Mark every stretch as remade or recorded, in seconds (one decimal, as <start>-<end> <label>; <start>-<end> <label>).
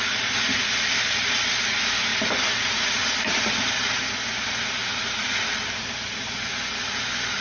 0.0-7.4 recorded